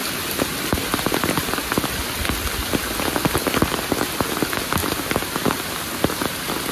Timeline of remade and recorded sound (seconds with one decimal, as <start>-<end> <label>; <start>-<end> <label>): 0.0-6.7 recorded